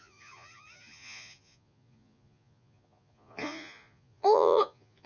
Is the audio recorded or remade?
remade